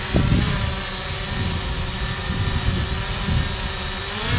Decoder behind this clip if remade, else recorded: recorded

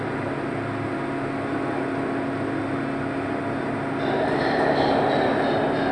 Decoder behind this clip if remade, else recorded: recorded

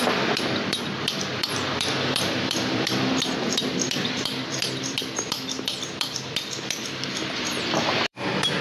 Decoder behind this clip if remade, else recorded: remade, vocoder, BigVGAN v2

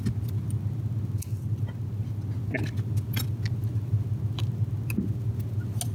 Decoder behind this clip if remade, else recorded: recorded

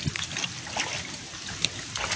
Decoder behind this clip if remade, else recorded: recorded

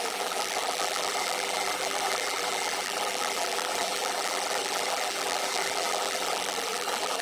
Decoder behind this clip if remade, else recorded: remade, vocoder, BigVGAN v2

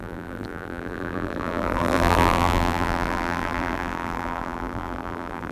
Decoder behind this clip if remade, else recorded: remade, vocoder, BigVGAN v2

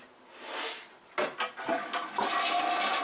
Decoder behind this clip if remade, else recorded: recorded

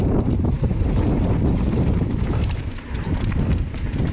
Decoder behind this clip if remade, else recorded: remade, vocoder, BigVGAN v2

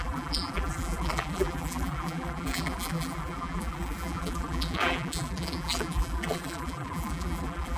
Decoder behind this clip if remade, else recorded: remade, vocoder, BigVGAN v2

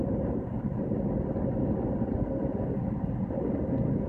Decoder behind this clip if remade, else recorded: recorded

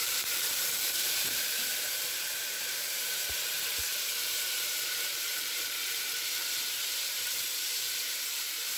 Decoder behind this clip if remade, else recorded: remade, vocoder, BigVGAN v2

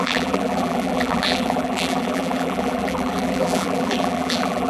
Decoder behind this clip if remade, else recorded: remade, vocoder, BigVGAN v2